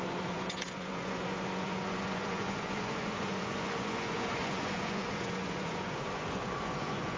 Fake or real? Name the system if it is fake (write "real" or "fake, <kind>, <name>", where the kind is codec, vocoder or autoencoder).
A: fake, vocoder, Vocos